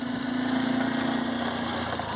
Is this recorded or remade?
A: recorded